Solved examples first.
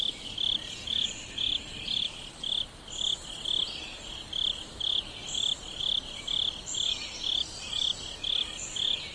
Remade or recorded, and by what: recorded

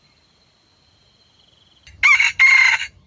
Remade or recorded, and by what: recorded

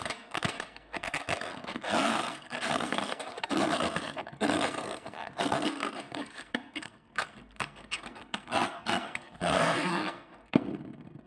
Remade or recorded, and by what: remade, codec, SNAC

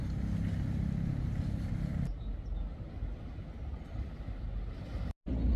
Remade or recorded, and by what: recorded